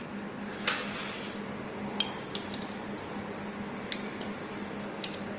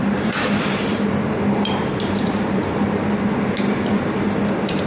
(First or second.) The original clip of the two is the first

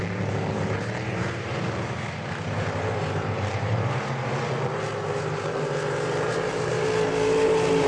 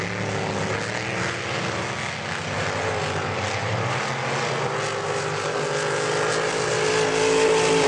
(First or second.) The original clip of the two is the second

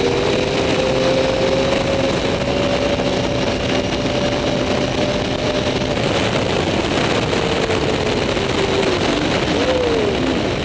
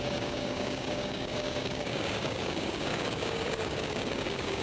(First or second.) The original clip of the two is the first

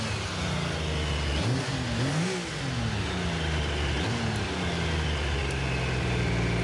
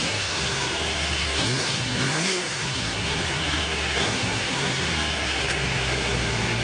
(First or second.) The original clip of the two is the first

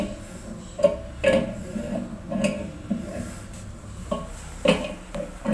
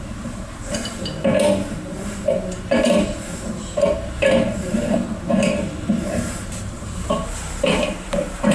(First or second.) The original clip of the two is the first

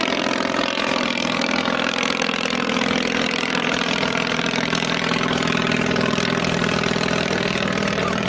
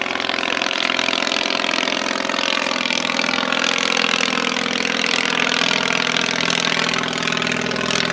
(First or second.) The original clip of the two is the second